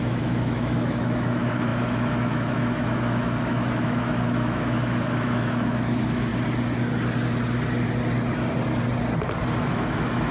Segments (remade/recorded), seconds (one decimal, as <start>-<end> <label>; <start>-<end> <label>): 0.0-6.3 remade; 6.3-9.6 recorded; 9.6-10.3 remade